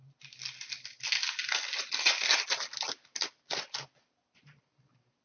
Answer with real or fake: real